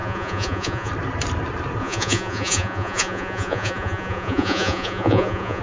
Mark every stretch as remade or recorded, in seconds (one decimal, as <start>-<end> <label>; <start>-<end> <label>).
0.0-0.9 remade; 0.9-1.8 recorded; 1.8-5.6 remade